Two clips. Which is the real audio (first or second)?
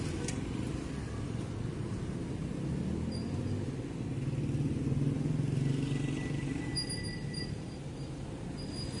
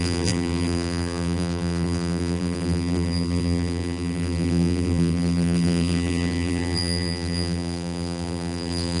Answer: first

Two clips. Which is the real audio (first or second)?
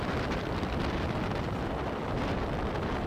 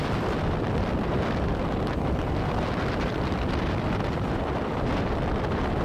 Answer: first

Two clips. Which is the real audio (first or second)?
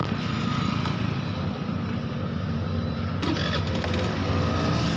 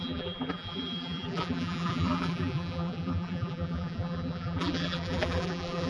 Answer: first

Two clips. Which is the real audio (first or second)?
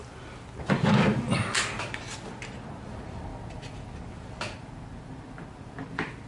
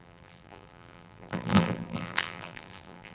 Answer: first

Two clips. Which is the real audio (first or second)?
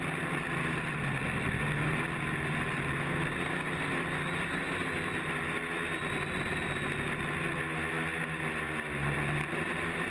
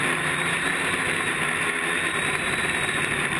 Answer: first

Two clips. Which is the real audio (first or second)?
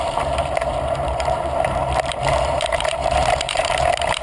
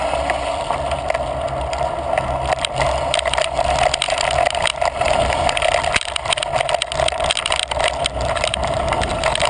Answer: second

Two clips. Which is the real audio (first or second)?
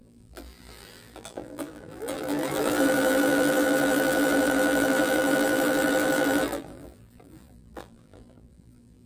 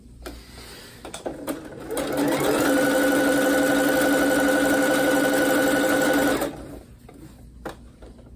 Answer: second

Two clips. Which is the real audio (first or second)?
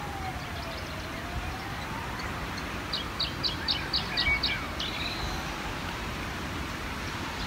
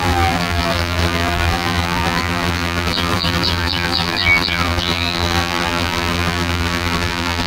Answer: first